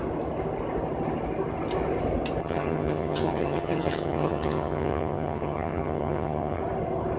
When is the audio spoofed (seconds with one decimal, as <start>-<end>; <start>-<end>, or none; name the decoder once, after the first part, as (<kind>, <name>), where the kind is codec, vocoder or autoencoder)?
2.4-6.6 (vocoder, HiFi-GAN)